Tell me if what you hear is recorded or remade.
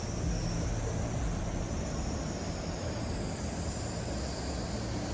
recorded